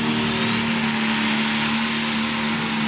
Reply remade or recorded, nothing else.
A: recorded